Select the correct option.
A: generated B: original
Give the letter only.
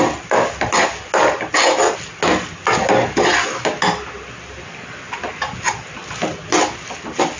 B